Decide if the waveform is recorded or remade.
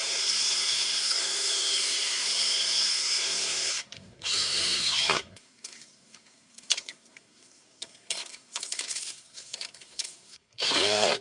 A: remade